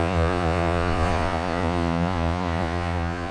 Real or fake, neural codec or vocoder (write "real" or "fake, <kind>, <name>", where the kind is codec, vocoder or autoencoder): fake, vocoder, Vocos